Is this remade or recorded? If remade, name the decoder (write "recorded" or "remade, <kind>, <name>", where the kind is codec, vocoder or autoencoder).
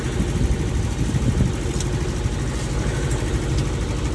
recorded